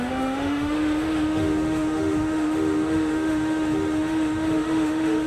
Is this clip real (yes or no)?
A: no